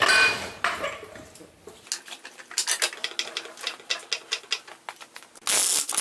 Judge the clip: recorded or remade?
recorded